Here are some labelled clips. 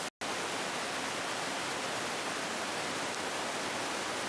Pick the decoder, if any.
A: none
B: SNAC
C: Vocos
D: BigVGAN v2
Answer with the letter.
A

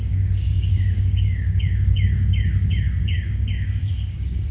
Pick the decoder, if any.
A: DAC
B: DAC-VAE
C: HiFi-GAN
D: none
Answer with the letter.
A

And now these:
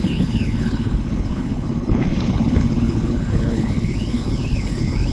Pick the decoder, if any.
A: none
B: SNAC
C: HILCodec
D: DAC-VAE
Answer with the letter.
C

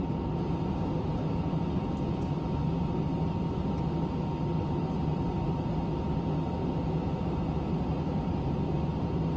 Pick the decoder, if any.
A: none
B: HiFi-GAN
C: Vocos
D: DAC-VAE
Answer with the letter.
A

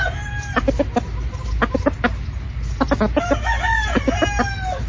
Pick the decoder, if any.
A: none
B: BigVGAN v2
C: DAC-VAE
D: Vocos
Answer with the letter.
A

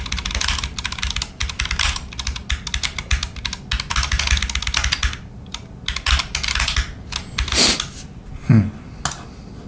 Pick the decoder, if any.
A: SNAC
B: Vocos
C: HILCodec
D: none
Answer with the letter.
D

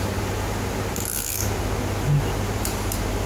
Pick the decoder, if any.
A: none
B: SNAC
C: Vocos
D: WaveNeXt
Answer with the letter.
A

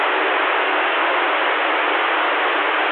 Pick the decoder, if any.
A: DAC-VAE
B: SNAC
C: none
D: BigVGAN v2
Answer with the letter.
C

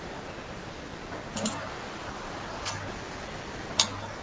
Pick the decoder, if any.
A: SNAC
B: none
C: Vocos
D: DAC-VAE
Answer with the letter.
B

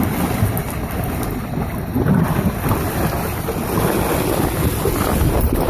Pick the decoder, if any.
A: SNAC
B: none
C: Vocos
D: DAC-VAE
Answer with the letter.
B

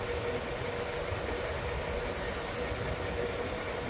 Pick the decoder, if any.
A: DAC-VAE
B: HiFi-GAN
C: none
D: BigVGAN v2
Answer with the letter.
C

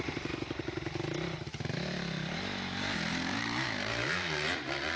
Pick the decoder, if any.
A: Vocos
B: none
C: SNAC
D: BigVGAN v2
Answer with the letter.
D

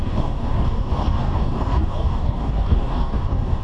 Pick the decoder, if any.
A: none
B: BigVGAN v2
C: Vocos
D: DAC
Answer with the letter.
D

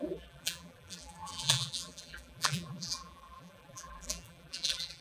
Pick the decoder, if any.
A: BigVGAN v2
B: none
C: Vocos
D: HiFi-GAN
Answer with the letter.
A